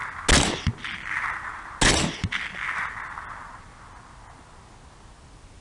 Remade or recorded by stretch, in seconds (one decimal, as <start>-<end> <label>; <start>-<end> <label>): 0.0-5.6 recorded